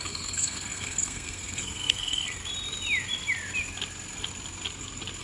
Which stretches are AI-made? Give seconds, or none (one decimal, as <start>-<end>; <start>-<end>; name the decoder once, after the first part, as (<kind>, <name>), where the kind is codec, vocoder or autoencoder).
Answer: 0.0-2.4 (codec, SNAC)